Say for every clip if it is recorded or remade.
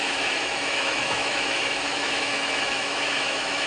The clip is remade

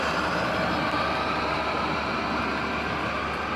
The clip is recorded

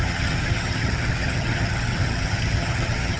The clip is remade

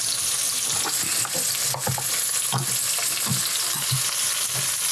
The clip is recorded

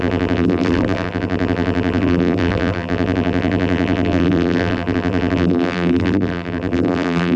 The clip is remade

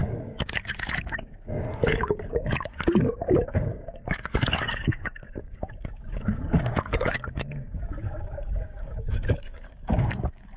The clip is remade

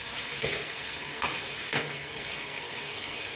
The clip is remade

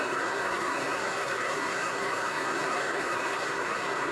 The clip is remade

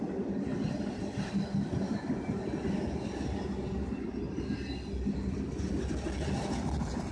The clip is recorded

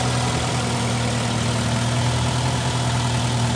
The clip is recorded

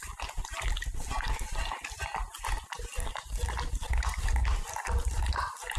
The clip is recorded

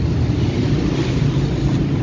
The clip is recorded